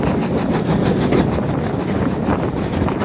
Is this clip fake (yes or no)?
yes